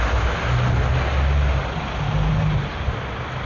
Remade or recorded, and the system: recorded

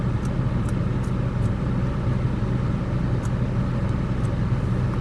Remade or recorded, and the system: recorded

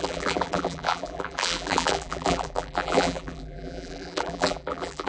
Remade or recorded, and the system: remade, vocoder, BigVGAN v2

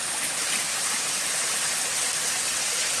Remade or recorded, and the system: recorded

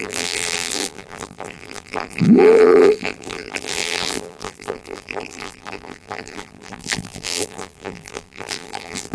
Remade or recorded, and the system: remade, vocoder, BigVGAN v2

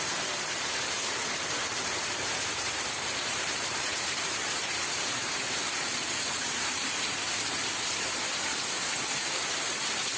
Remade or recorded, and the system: remade, vocoder, BigVGAN v2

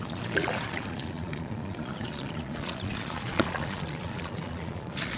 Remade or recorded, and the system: remade, vocoder, Vocos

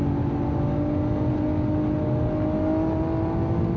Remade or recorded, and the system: recorded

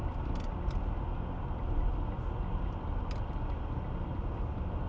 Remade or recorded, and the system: recorded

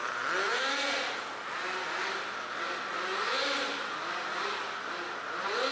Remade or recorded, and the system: recorded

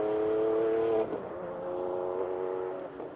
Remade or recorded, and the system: recorded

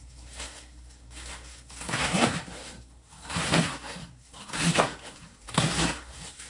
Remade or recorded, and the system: remade, codec, SNAC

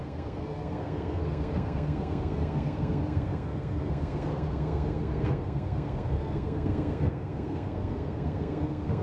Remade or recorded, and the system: remade, codec, SNAC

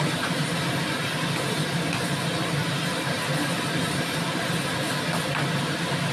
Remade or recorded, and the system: recorded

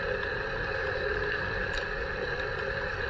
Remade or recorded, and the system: recorded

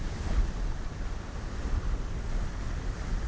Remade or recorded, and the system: remade, vocoder, BigVGAN v2